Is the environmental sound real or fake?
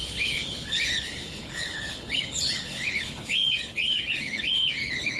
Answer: fake